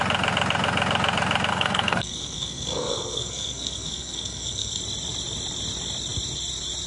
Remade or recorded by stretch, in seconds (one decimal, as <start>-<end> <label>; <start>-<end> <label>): 0.0-1.5 recorded; 1.5-4.8 remade; 4.8-6.9 recorded